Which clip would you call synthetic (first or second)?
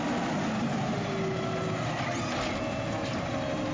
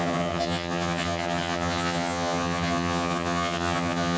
second